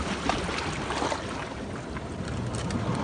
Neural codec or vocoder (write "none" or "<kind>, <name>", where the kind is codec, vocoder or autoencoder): none